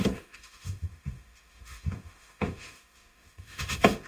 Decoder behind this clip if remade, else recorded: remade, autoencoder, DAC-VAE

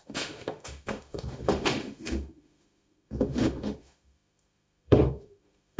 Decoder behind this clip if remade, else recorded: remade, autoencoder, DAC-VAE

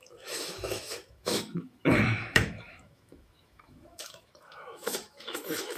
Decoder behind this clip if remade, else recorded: remade, autoencoder, DAC-VAE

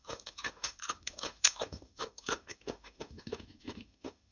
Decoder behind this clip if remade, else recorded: remade, autoencoder, DAC-VAE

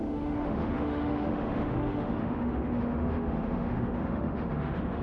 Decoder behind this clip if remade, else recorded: remade, autoencoder, DAC-VAE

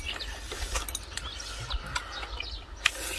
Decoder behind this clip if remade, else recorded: recorded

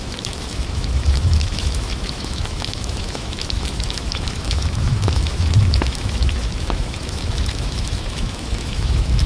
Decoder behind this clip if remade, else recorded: remade, autoencoder, DAC-VAE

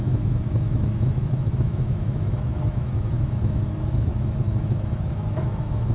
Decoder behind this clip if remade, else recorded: remade, autoencoder, DAC-VAE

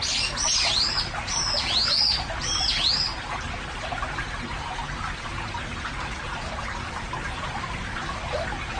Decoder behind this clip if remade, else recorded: recorded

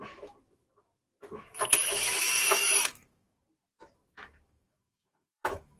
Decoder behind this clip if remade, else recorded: remade, autoencoder, DAC-VAE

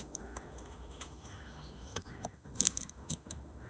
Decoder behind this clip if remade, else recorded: remade, autoencoder, DAC-VAE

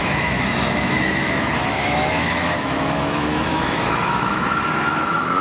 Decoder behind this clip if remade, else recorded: remade, autoencoder, DAC-VAE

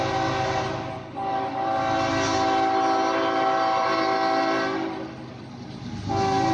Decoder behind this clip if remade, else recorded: recorded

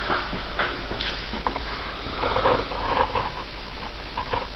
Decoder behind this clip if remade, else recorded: remade, autoencoder, DAC-VAE